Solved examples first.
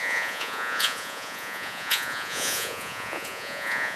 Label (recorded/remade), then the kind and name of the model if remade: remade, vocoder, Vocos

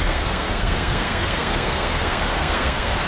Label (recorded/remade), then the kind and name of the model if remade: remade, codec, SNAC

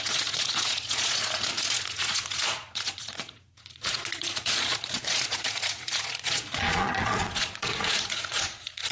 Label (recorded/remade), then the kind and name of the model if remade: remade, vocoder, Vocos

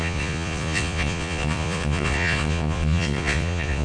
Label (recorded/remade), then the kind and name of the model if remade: remade, vocoder, Vocos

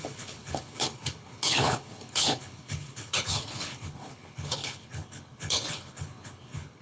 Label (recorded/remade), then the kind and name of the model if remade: remade, codec, HILCodec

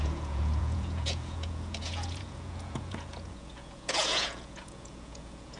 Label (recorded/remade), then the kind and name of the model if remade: remade, vocoder, Vocos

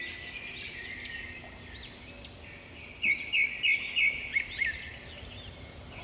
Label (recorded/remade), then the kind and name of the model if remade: recorded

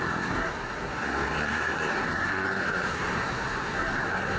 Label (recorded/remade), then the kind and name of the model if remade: remade, codec, SNAC